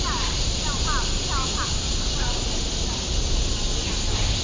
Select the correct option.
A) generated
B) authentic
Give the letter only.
B